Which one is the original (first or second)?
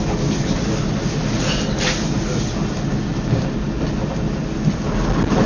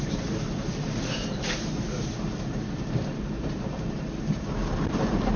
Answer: first